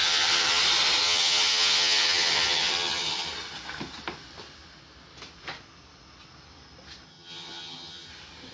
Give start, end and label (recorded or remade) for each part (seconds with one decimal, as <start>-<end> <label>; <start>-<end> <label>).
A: 0.0-0.6 remade; 0.6-1.0 recorded; 1.0-3.3 remade; 3.3-7.1 recorded; 7.1-8.1 remade; 8.1-8.5 recorded